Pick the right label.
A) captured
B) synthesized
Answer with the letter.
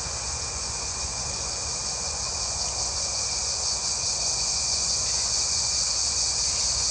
B